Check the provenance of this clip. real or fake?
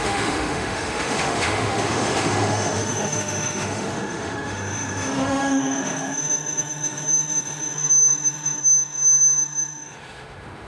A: fake